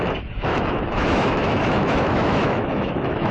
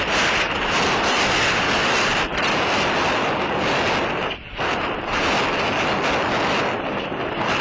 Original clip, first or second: second